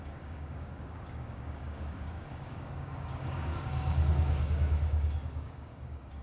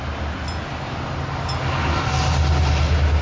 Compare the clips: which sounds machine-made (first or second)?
first